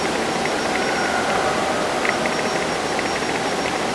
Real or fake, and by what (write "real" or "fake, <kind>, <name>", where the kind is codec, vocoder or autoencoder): real